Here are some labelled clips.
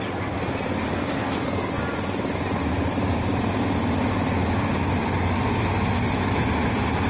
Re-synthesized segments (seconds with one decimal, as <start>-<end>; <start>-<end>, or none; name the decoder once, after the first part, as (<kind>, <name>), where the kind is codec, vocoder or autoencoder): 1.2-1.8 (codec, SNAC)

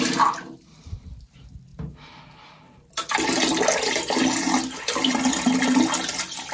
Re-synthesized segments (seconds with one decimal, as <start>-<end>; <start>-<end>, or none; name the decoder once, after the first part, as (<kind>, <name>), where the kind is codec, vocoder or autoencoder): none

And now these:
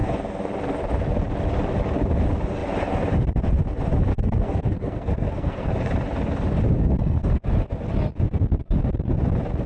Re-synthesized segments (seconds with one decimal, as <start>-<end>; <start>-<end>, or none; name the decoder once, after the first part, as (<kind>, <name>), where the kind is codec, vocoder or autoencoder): 4.1-5.7 (codec, SNAC); 6.8-7.4